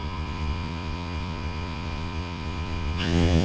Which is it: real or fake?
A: fake